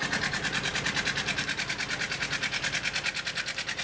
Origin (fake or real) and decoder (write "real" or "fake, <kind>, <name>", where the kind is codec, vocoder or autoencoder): fake, vocoder, BigVGAN v2